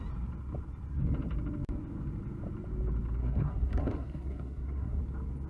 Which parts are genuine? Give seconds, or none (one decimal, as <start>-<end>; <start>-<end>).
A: 0.0-3.2; 5.0-5.5